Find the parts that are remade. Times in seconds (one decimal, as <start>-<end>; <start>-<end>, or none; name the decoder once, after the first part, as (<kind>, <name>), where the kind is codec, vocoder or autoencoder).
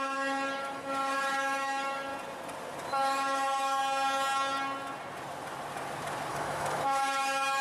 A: 0.0-2.1 (autoencoder, DAC-VAE); 2.9-3.8; 6.3-7.6